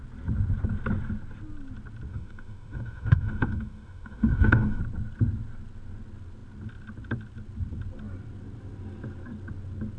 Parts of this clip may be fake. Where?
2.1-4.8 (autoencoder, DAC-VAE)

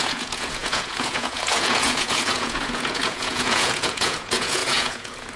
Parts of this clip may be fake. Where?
0.0-5.4 (vocoder, Vocos)

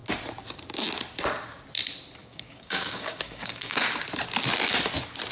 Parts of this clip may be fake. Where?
2.2-3.8 (codec, DAC)

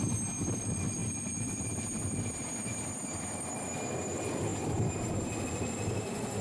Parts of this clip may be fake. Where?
none